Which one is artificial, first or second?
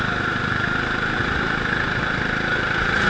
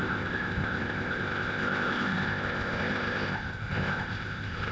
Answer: second